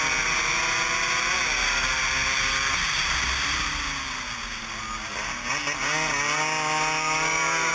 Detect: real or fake real